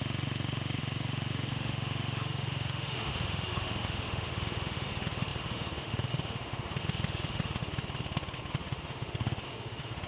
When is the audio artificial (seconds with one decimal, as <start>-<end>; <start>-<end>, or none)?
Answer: 0.0-7.6; 8.5-10.1